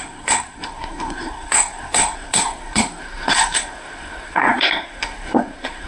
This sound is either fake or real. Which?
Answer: fake